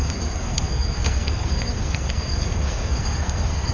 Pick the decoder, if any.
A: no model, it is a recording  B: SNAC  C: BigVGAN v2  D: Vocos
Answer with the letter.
B